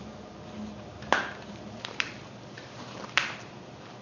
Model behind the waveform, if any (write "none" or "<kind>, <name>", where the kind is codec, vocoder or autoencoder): vocoder, BigVGAN v2